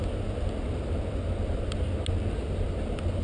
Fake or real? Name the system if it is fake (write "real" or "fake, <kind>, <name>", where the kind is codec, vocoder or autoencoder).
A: real